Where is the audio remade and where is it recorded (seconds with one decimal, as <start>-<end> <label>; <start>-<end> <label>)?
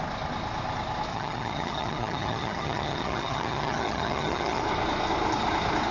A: 0.0-1.1 recorded; 1.1-4.6 remade; 4.6-5.9 recorded